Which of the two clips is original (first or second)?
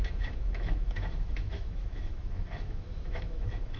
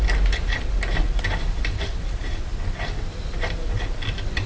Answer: second